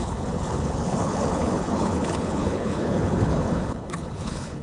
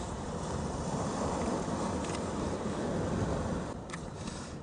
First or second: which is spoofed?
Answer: first